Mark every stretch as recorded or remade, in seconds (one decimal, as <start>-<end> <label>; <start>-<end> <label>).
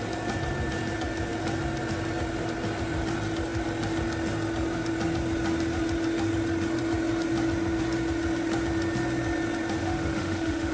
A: 0.0-9.8 recorded; 9.8-10.7 remade